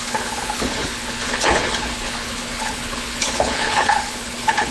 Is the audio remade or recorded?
remade